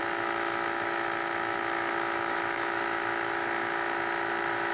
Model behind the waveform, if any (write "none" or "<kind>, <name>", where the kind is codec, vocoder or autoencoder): autoencoder, DAC-VAE